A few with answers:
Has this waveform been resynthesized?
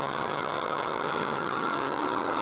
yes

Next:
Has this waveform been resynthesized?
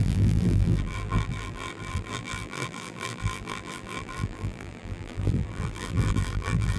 yes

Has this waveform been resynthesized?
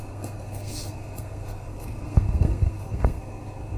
yes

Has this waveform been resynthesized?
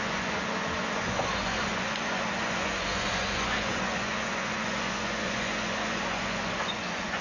yes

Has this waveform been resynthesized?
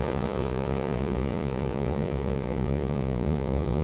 yes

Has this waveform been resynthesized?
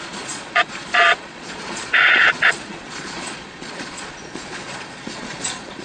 yes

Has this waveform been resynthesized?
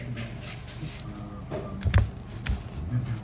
no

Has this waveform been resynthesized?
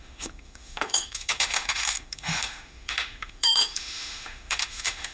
yes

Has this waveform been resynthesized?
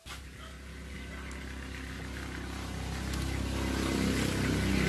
no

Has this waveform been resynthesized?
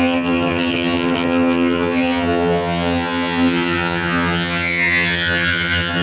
yes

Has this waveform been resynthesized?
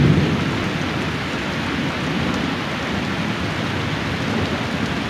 no